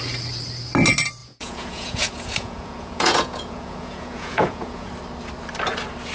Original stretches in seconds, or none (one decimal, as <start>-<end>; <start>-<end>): 0.0-1.2; 4.9-6.1

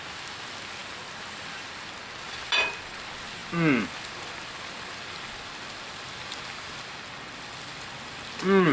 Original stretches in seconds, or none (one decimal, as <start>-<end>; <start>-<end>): 0.0-8.7